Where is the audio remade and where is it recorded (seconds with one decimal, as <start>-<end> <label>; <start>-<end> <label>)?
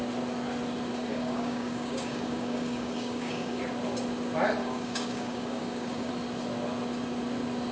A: 0.0-1.1 recorded; 1.1-3.6 remade; 3.6-4.6 recorded; 4.6-6.1 remade; 6.1-7.7 recorded